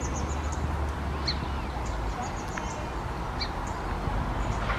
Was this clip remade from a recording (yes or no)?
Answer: no